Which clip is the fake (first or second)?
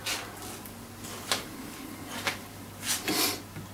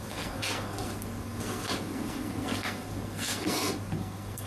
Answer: second